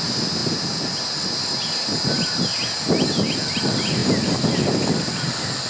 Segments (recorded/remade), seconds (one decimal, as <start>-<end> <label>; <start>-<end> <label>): 0.0-5.7 recorded